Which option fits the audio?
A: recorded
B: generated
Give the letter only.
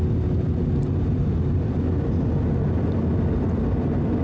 A